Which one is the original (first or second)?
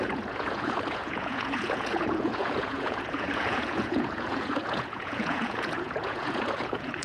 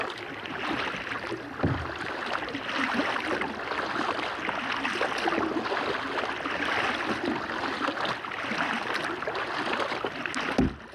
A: second